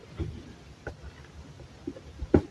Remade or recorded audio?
recorded